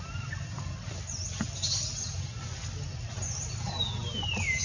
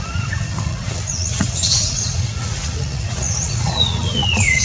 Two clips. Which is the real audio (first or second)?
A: first